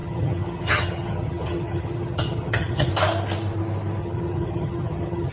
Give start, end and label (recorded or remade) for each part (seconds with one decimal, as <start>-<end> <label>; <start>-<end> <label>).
0.0-2.9 remade; 2.9-4.0 recorded; 4.0-5.3 remade